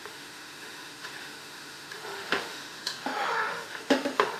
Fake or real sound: fake